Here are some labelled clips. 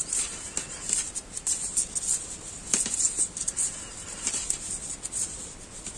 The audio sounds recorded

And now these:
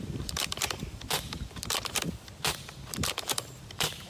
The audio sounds remade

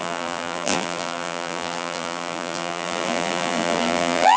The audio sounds remade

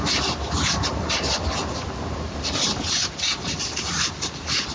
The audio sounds remade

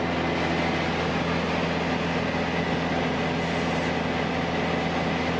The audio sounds recorded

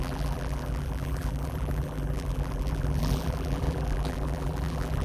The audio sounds remade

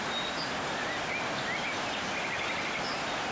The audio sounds recorded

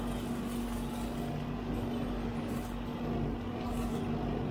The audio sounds recorded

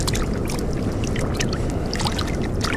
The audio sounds recorded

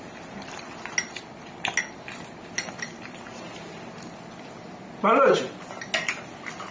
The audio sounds recorded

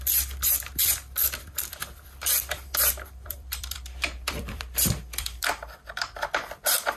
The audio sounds remade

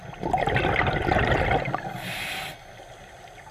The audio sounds recorded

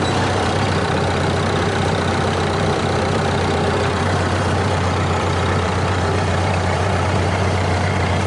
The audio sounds remade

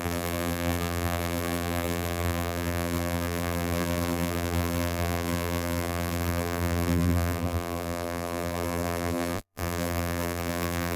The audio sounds remade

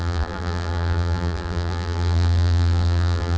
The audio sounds remade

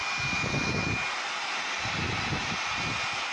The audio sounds recorded